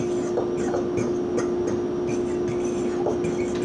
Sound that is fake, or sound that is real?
real